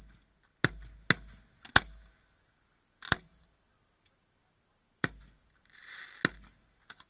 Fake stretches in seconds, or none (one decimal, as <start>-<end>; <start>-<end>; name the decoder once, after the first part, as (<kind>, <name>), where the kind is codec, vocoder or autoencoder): 3.3-6.0 (vocoder, BigVGAN v2)